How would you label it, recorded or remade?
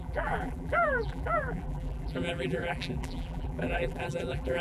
remade